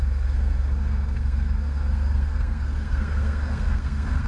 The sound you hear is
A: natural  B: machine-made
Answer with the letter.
B